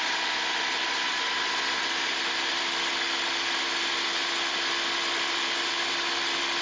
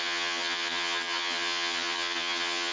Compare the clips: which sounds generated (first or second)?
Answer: second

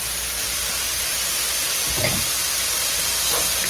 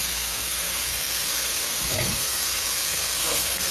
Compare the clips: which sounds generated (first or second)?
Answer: second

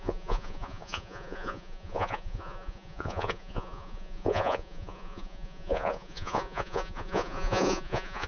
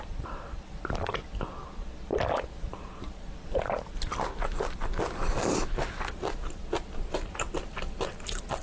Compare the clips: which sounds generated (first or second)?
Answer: first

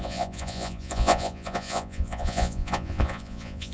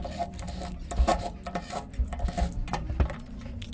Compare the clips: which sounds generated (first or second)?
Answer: first